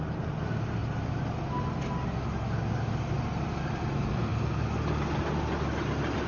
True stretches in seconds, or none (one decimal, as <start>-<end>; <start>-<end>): 0.0-6.3